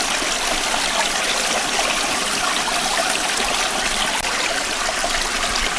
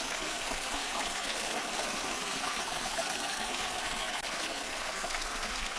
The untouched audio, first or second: first